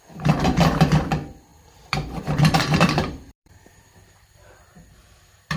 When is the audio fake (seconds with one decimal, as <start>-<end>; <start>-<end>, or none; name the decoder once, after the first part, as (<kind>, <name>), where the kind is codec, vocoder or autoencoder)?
1.5-4.9 (vocoder, BigVGAN v2)